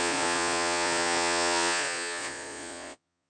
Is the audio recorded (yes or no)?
no